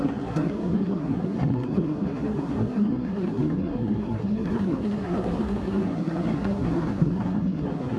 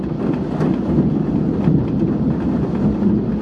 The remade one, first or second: first